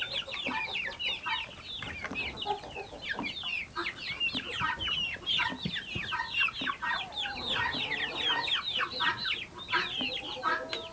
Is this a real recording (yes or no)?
yes